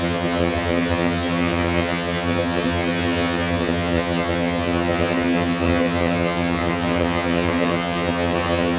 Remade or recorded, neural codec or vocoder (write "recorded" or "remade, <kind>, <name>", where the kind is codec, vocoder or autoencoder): remade, vocoder, HiFi-GAN